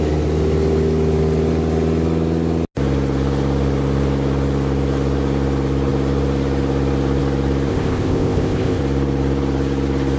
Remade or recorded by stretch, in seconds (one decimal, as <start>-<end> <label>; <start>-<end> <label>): 0.0-7.7 recorded; 7.7-8.8 remade; 8.8-10.2 recorded